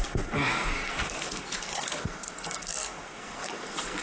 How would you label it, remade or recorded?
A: remade